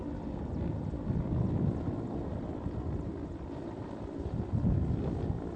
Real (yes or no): yes